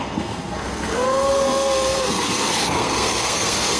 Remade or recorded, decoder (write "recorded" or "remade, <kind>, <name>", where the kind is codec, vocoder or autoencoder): remade, codec, SNAC